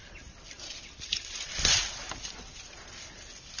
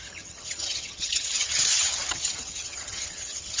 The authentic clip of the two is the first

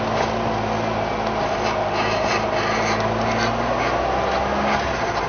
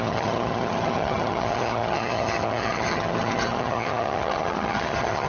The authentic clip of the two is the first